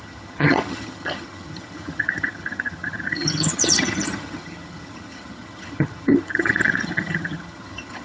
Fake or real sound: fake